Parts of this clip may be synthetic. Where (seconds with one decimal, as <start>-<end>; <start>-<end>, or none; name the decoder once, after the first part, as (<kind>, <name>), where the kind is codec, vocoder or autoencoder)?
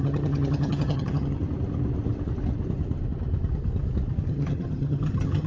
0.0-1.4 (vocoder, HiFi-GAN); 4.3-5.5